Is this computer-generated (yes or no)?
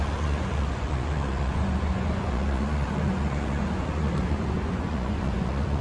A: yes